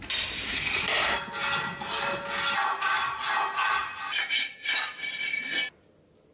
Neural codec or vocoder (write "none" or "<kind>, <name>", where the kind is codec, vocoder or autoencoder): none